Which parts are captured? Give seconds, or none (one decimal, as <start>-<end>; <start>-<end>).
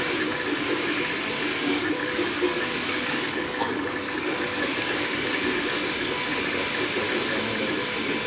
0.0-1.5; 5.5-8.3